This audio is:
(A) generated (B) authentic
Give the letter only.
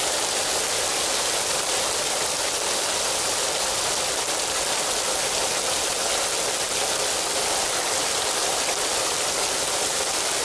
B